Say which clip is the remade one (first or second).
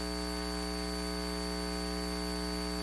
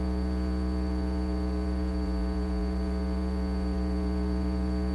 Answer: second